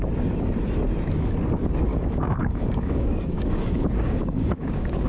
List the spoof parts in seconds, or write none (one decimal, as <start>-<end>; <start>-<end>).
1.9-5.1